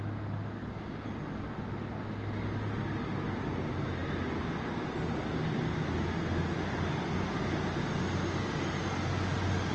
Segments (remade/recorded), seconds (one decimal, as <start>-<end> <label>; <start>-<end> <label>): 0.0-9.7 recorded

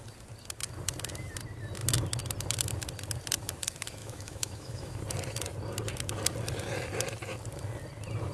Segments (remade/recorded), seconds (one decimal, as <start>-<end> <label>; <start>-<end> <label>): 0.0-4.0 recorded; 4.0-5.0 remade; 5.0-8.3 recorded

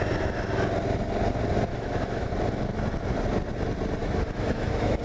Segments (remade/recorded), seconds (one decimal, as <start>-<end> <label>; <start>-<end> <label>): 0.0-1.7 recorded; 1.7-2.3 remade; 2.3-4.0 recorded; 4.0-5.0 remade

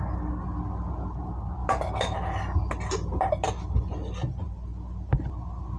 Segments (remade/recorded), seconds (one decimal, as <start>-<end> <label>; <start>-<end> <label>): 0.0-5.8 recorded

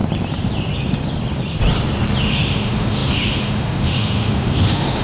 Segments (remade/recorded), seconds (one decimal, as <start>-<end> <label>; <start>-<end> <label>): 0.0-2.2 recorded; 2.2-5.0 remade

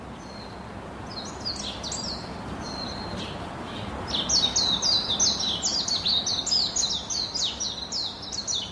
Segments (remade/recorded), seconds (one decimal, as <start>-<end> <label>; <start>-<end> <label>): 0.0-8.7 recorded